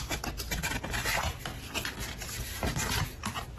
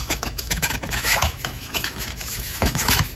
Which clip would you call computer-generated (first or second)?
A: second